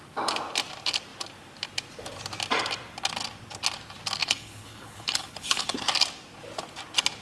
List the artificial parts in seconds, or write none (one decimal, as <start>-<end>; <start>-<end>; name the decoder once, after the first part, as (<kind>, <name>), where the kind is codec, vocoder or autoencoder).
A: 4.2-5.9 (codec, HILCodec)